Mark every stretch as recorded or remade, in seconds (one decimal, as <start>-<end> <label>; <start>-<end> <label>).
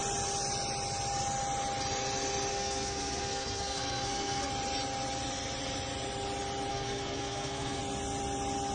0.0-2.5 recorded; 2.5-4.5 remade; 4.5-6.7 recorded; 6.7-7.8 remade; 7.8-8.7 recorded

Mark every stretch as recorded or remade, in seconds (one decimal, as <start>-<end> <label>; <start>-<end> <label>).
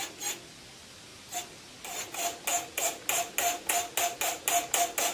0.0-5.1 recorded